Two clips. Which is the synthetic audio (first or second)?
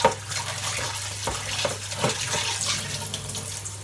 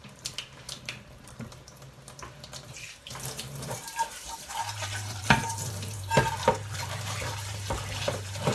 second